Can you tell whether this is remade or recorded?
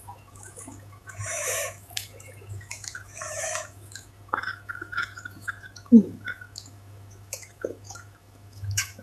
remade